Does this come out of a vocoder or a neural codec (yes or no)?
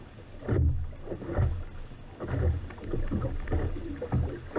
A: no